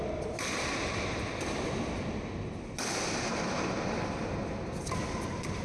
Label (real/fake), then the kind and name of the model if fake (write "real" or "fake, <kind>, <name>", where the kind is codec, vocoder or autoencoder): real